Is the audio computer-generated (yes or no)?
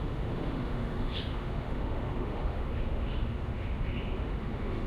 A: yes